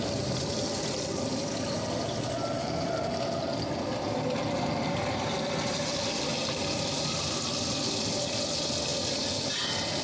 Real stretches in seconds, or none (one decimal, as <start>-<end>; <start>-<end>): 0.0-10.0